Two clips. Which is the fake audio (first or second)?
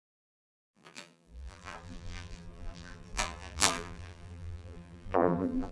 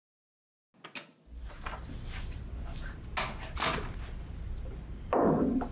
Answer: first